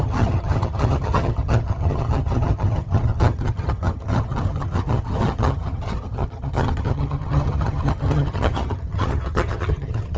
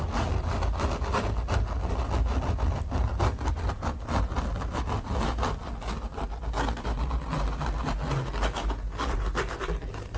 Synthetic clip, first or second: first